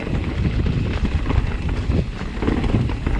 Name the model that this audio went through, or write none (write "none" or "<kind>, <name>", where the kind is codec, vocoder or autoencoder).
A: none